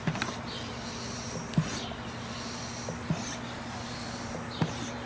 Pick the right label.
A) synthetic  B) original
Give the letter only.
B